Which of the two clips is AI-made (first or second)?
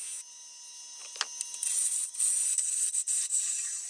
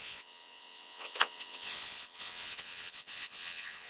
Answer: second